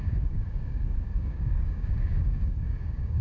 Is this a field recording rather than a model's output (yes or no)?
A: no